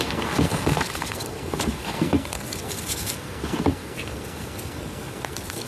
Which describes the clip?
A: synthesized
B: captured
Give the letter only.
A